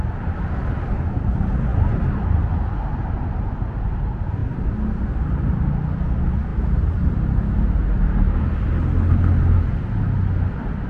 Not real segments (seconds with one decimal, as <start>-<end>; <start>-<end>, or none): none